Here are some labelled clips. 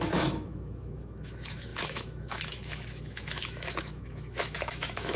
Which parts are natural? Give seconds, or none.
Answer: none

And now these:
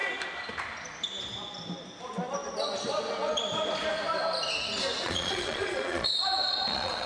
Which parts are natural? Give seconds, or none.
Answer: 0.0-5.0

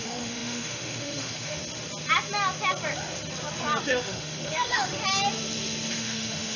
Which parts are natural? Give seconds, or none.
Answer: 1.6-3.8; 5.0-6.0